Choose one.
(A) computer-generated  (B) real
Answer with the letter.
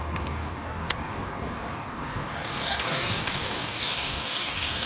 A